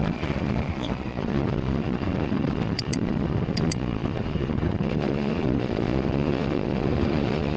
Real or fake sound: fake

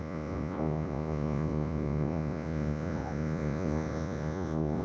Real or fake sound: fake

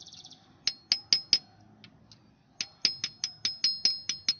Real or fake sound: real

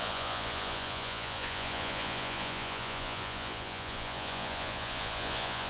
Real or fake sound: fake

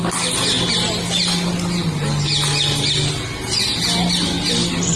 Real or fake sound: real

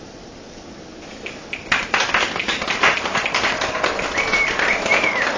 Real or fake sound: real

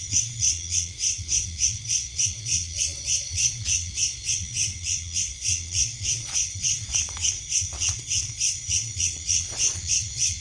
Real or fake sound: fake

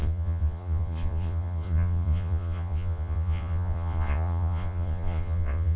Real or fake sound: fake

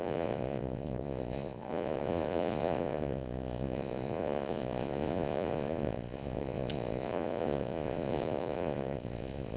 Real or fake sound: fake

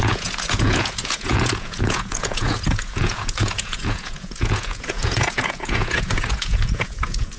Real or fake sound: fake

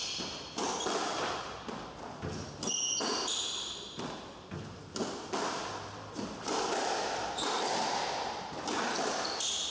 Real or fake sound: real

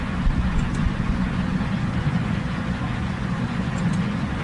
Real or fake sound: fake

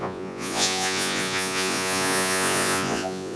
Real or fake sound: fake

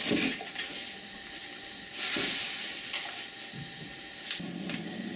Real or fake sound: real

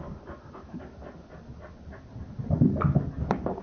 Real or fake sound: real